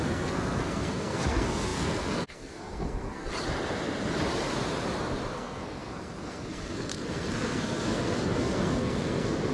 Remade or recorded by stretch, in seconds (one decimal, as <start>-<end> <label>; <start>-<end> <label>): 0.0-3.3 remade; 3.3-5.3 recorded; 5.3-9.5 remade